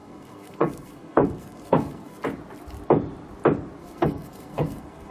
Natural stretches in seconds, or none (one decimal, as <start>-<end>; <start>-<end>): 2.2-3.8